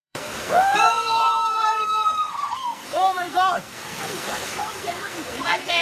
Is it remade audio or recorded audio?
remade